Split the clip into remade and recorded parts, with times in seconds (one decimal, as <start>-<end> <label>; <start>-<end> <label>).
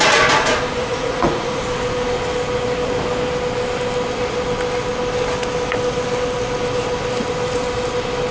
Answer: 0.0-0.8 recorded; 0.8-1.6 remade; 1.6-8.3 recorded